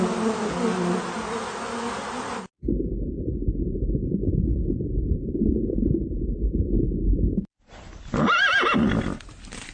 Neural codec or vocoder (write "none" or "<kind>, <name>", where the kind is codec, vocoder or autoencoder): none